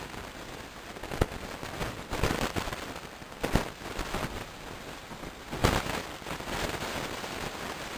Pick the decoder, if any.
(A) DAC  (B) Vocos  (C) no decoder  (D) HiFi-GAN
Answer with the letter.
C